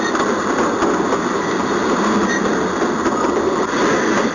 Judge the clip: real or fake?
real